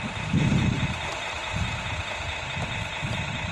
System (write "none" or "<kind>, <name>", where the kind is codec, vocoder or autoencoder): none